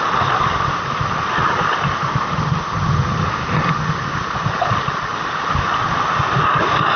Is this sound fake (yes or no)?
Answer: no